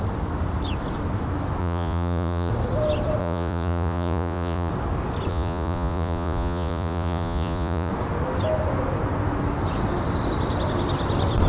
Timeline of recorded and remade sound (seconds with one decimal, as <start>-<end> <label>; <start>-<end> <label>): 0.0-1.6 recorded; 1.6-2.5 remade; 2.5-3.2 recorded; 3.2-4.7 remade; 4.7-5.3 recorded; 5.3-7.9 remade; 7.9-11.5 recorded